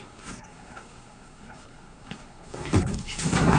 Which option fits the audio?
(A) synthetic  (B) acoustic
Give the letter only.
A